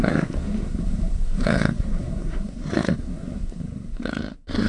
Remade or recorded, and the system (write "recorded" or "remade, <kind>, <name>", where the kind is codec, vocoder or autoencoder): remade, codec, SNAC